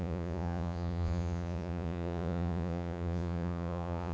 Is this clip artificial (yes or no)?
yes